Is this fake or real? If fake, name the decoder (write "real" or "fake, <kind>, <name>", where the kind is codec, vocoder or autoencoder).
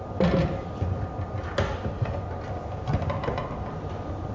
real